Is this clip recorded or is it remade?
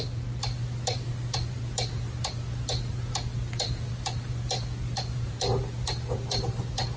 recorded